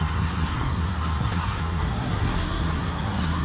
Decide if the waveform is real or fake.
fake